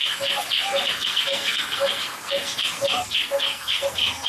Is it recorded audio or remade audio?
remade